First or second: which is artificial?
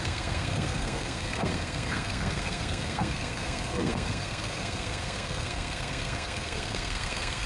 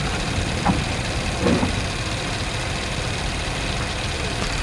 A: first